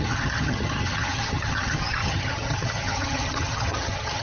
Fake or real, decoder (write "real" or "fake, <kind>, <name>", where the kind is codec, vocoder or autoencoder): fake, vocoder, HiFi-GAN